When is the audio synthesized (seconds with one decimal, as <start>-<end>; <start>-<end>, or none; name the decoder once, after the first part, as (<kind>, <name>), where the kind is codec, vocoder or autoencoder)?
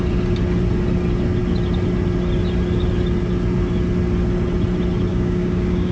5.1-5.9 (codec, DAC)